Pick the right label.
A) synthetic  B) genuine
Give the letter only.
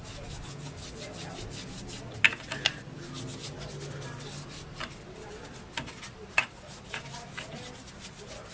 B